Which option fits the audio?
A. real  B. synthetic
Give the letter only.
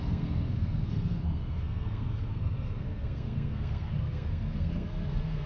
B